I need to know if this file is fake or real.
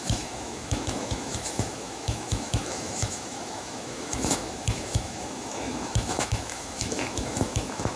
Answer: fake